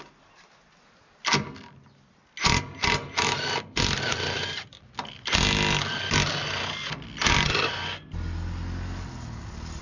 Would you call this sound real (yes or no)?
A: yes